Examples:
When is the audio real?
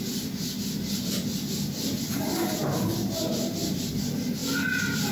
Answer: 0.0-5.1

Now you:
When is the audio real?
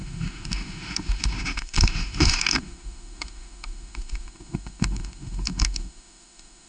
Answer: none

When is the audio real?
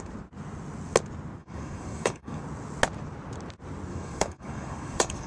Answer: 0.0-1.4; 2.4-3.9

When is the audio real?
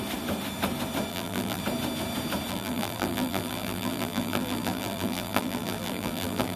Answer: 0.0-1.1; 1.6-2.5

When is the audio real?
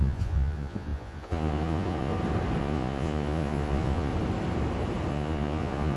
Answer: 2.1-2.6; 4.1-5.1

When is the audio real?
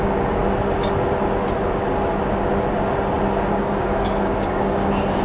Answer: 0.4-3.5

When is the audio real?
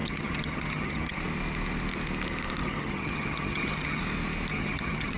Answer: 1.2-2.6; 4.0-4.5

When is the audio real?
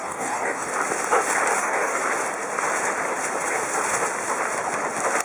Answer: 0.7-1.6; 2.0-5.2